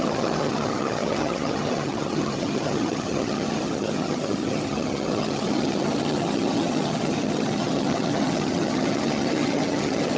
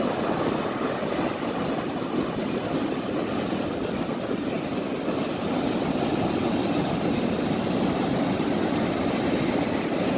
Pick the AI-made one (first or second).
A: first